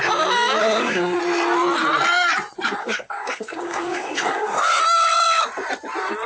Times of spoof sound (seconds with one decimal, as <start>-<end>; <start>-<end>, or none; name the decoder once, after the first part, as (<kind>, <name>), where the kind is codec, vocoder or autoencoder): 0.6-1.2 (codec, SNAC); 2.8-4.8